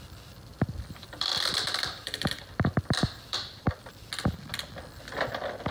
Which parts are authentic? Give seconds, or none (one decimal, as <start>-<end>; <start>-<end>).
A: 0.0-0.5; 3.9-5.7